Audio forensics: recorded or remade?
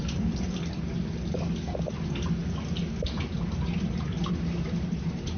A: recorded